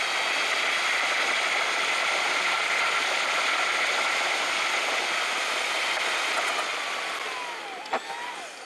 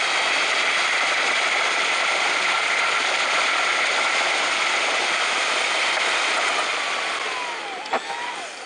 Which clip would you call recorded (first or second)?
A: first